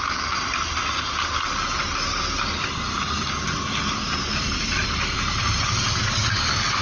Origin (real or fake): real